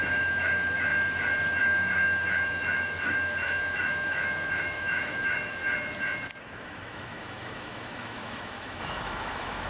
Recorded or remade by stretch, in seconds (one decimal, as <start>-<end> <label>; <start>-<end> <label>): 0.0-0.9 remade; 0.9-1.6 recorded; 1.6-5.6 remade; 5.6-6.4 recorded; 6.4-9.7 remade